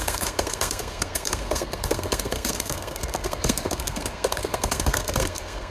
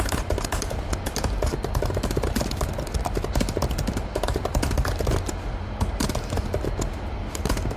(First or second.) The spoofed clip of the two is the first